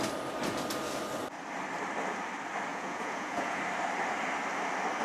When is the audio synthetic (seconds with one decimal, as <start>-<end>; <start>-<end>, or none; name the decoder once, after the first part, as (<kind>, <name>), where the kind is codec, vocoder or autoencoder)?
2.7-3.6 (vocoder, Vocos)